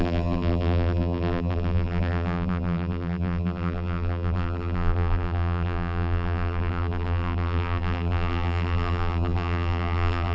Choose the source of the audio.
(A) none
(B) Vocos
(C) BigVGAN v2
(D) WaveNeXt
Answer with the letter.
C